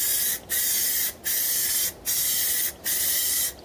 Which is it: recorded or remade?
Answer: recorded